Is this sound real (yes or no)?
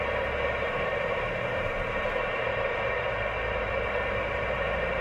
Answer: no